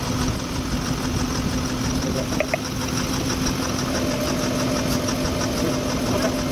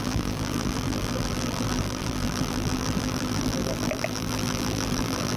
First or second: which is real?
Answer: first